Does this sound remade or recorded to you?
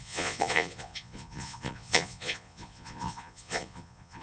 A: remade